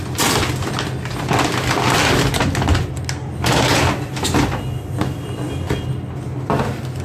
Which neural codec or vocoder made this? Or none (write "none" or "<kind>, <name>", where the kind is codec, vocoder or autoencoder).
none